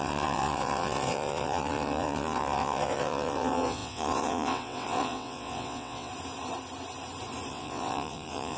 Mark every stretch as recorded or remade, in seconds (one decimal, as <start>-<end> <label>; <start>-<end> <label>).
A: 0.0-6.1 remade; 6.1-7.5 recorded; 7.5-8.6 remade